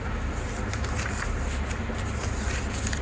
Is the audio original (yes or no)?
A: yes